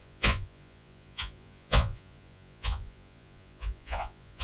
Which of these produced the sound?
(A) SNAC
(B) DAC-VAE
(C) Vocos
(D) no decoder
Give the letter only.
C